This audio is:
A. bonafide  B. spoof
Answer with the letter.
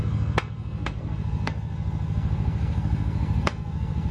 B